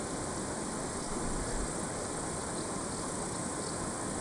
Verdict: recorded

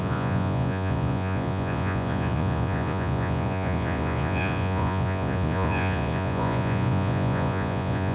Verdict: remade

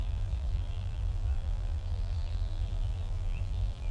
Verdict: remade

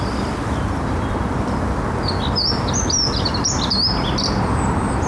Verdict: recorded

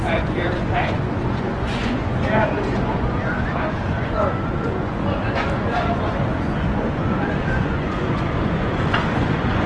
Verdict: remade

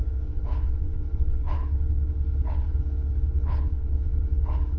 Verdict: remade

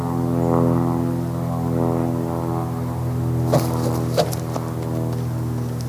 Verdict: recorded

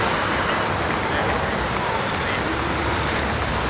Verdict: recorded